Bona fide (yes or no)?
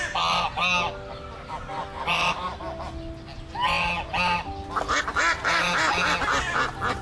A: yes